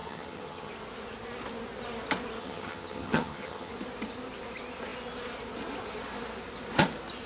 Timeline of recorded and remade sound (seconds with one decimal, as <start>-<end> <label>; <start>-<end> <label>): 0.0-0.7 remade; 0.7-2.4 recorded; 2.4-3.7 remade; 3.7-7.3 recorded